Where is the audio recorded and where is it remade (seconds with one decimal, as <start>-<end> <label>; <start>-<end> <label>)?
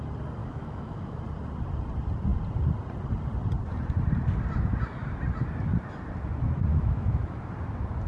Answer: 0.0-0.4 recorded; 0.4-1.2 remade; 1.2-6.7 recorded; 6.7-7.4 remade; 7.4-8.1 recorded